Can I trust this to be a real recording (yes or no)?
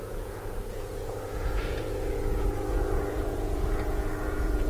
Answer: no